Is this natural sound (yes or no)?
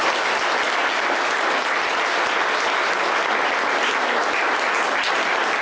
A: yes